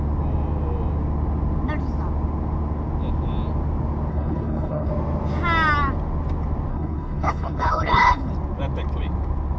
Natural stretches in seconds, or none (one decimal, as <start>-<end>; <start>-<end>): 0.0-4.1; 4.9-6.7; 8.3-9.6